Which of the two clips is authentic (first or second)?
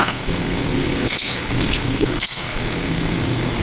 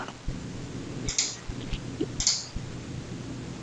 second